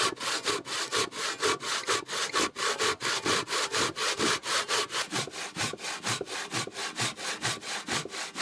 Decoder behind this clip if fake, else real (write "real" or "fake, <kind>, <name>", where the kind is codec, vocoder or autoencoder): real